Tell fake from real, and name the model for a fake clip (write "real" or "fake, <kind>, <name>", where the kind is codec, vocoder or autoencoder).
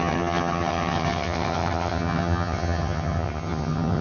fake, vocoder, HiFi-GAN